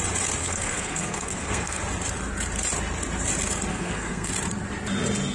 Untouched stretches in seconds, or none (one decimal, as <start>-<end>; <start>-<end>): 0.0-0.4; 1.8-3.7; 4.3-5.3